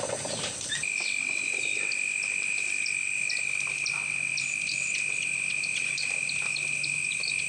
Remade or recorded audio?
recorded